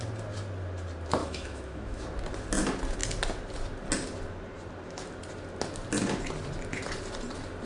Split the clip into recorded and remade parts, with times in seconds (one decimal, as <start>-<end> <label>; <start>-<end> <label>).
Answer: 0.0-1.2 recorded; 1.2-2.0 remade; 2.0-7.7 recorded